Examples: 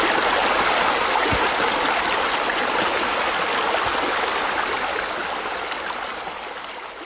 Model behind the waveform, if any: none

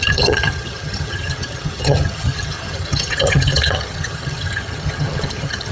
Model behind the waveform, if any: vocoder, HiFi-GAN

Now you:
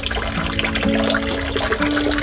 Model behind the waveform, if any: none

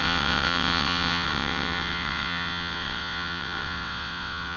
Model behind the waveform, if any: vocoder, WaveNeXt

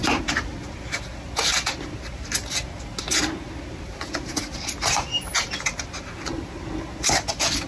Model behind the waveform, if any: none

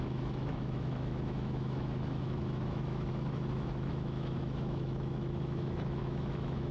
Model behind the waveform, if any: autoencoder, DAC-VAE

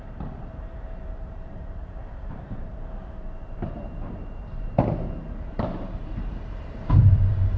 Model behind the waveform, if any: vocoder, BigVGAN v2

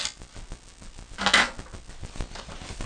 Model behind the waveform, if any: none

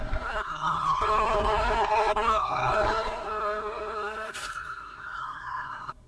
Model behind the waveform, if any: codec, SNAC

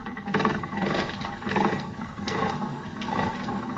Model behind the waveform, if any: codec, SNAC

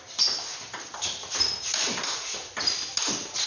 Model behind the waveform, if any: none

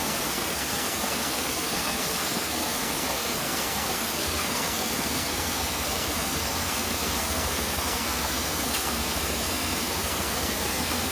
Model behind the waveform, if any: codec, SNAC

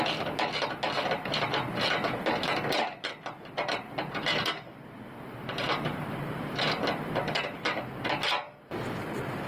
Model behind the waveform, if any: none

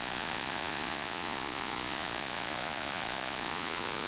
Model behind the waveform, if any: vocoder, Vocos